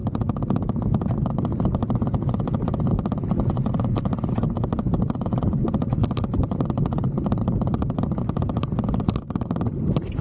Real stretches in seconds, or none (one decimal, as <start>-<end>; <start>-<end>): 0.0-3.7